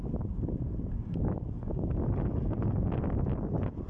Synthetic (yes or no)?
no